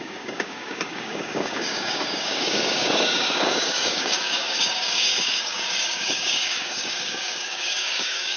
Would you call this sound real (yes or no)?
no